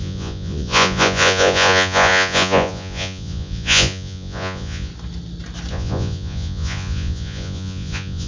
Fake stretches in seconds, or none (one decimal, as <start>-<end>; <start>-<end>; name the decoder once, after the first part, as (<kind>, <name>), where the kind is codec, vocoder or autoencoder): 0.0-4.9 (vocoder, Vocos); 5.7-8.3